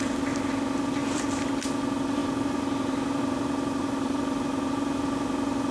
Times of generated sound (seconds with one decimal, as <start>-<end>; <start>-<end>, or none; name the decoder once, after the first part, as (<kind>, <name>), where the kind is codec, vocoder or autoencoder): 0.0-5.7 (vocoder, BigVGAN v2)